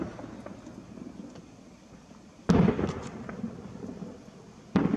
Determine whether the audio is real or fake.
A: real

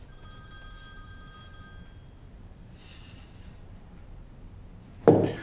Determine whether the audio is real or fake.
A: real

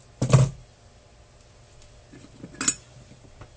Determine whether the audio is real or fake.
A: real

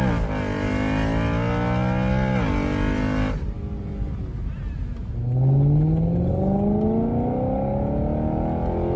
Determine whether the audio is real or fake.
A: real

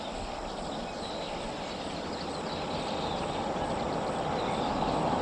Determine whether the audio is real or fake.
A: real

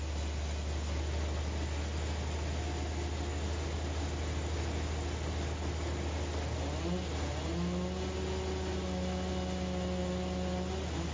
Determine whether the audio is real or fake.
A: real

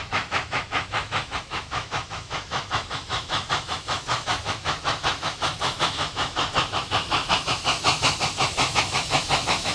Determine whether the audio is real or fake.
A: fake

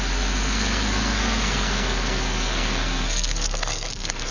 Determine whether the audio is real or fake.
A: fake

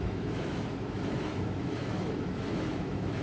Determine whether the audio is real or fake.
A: fake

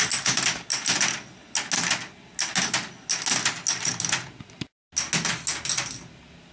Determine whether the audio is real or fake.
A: real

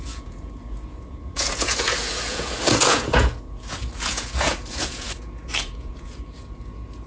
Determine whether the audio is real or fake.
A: fake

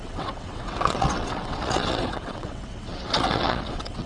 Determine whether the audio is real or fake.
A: fake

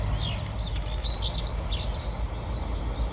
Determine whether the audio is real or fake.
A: real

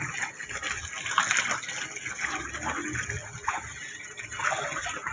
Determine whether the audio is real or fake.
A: real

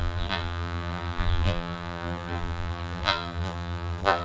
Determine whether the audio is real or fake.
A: fake